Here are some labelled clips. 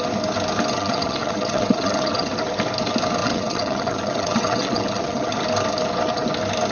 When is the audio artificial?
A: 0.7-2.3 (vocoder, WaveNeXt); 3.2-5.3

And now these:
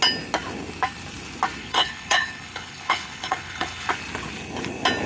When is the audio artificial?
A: 1.6-3.9 (codec, HILCodec)